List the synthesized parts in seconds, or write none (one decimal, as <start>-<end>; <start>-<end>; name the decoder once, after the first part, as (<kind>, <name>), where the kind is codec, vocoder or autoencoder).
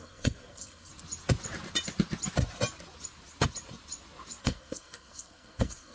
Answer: 0.0-0.9 (codec, SNAC); 4.4-5.9